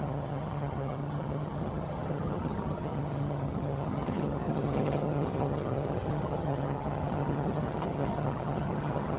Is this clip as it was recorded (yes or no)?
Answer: no